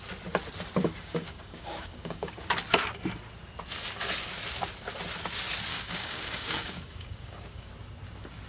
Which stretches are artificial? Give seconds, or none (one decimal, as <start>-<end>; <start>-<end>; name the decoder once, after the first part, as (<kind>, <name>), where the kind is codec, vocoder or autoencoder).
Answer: 0.8-2.3 (codec, DAC); 5.7-7.7